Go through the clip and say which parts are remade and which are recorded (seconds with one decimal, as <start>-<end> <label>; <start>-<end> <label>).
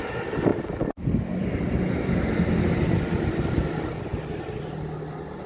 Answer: 0.0-5.5 recorded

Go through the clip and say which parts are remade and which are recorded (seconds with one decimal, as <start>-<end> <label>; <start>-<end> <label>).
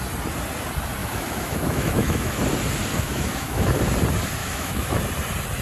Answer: 0.0-1.0 recorded; 1.0-2.4 remade; 2.4-2.9 recorded; 2.9-3.8 remade; 3.8-4.4 recorded; 4.4-5.0 remade; 5.0-5.6 recorded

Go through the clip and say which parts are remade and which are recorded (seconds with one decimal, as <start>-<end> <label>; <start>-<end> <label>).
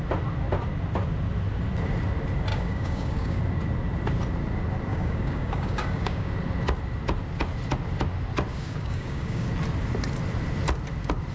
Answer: 0.0-2.5 recorded; 2.5-3.4 remade; 3.4-4.9 recorded; 4.9-6.3 remade; 6.3-8.5 recorded; 8.5-9.5 remade; 9.5-11.3 recorded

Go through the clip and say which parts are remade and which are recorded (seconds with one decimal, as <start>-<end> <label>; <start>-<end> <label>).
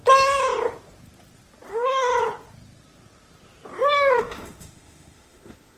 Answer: 0.0-1.7 recorded; 1.7-2.1 remade; 2.1-4.1 recorded; 4.1-5.8 remade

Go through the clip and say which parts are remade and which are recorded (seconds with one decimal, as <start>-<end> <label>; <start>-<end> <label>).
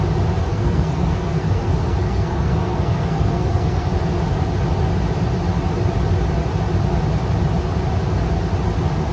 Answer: 0.0-0.5 recorded; 0.5-3.9 remade; 3.9-9.1 recorded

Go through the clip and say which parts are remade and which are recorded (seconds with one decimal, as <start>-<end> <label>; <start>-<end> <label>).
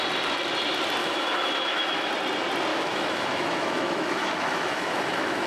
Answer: 0.0-1.0 recorded; 1.0-2.1 remade; 2.1-2.7 recorded; 2.7-5.5 remade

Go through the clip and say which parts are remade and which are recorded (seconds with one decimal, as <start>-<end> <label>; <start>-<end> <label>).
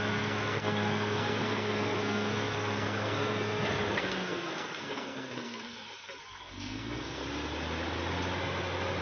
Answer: 0.0-7.2 remade; 7.2-9.0 recorded